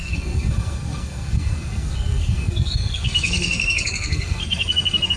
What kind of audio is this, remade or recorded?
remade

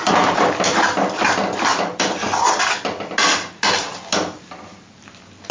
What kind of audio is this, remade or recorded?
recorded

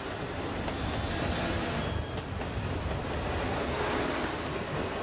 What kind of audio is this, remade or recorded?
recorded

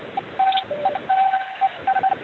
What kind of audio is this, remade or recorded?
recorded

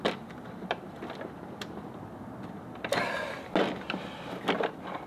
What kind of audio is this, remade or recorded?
recorded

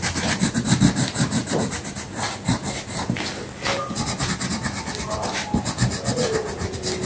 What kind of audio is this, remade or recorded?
recorded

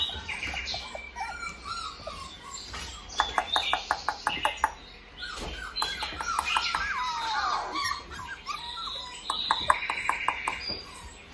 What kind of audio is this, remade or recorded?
recorded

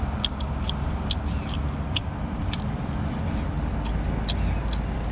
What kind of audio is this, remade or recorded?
recorded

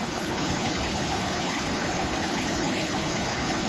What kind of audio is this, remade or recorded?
remade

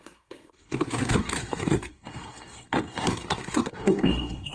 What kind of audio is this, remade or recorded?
remade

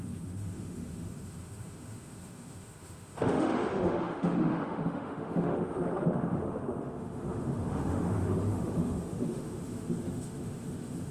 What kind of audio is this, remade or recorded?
remade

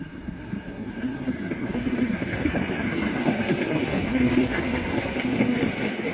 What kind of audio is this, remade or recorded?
remade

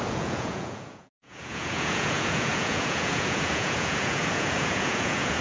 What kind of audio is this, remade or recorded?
remade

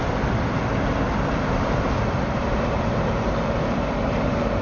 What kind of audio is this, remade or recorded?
remade